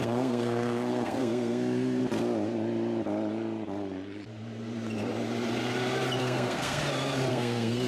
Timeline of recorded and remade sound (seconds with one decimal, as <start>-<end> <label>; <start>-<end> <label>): 0.0-2.0 remade; 2.0-6.2 recorded; 6.2-6.8 remade; 6.8-7.3 recorded; 7.3-7.9 remade